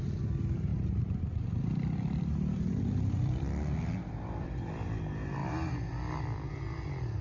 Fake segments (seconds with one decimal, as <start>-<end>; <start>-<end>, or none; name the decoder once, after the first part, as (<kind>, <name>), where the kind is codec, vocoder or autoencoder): 0.7-5.0 (vocoder, BigVGAN v2); 5.4-6.5